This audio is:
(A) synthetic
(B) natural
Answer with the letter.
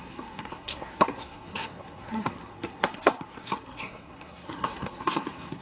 A